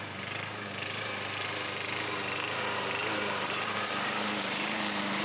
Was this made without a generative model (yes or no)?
no